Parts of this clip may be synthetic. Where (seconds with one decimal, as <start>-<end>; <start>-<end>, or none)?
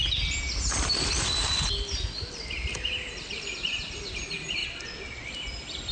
4.6-5.3